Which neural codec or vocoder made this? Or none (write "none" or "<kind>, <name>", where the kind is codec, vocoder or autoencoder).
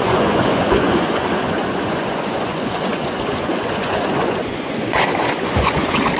vocoder, Vocos